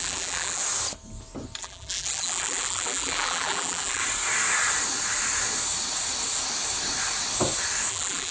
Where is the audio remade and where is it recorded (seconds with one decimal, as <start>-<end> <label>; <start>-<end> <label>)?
0.0-0.6 remade; 0.6-1.6 recorded; 1.6-4.0 remade; 4.0-7.9 recorded; 7.9-8.3 remade